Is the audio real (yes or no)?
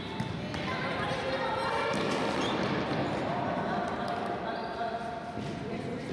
yes